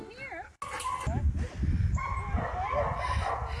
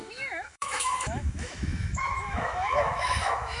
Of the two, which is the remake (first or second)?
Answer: second